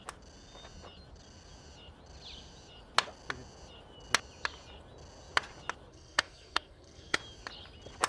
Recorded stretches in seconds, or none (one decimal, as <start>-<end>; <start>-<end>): 0.0-5.9; 7.2-8.1